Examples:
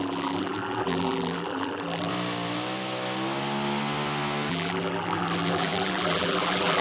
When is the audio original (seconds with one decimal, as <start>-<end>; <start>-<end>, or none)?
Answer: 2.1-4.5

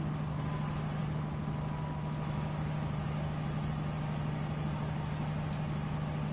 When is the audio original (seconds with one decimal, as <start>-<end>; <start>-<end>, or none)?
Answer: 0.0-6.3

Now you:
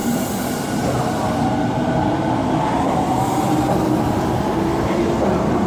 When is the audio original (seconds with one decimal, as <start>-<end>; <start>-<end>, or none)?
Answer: 3.2-5.7

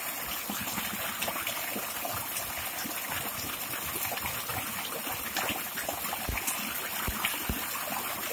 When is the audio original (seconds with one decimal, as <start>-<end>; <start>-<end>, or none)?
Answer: 0.0-4.5; 5.2-8.3